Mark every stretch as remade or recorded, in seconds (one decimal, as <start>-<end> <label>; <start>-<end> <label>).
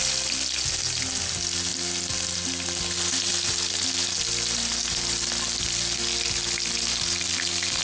0.0-7.8 recorded